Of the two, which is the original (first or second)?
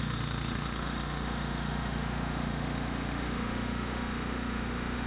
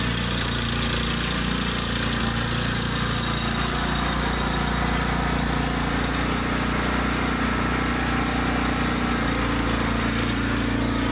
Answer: second